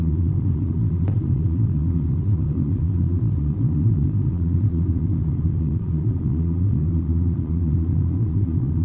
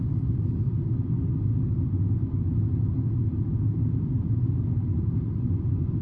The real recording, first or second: second